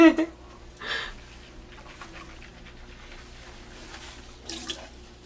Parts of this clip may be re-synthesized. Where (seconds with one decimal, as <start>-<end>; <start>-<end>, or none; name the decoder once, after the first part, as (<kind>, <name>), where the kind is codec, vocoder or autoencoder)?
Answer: none